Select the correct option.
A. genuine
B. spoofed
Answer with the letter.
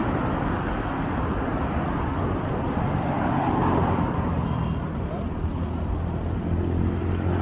A